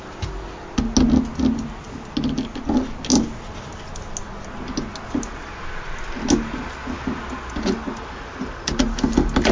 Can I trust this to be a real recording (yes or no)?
yes